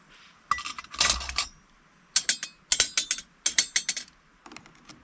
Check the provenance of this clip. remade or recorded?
recorded